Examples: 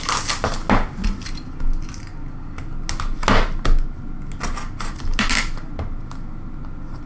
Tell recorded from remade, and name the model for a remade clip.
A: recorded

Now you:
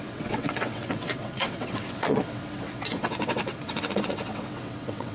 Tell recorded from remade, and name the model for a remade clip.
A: remade, vocoder, WaveNeXt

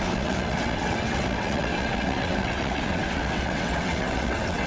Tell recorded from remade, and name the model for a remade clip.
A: remade, vocoder, WaveNeXt